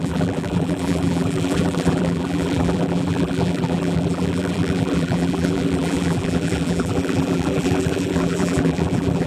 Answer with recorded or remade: remade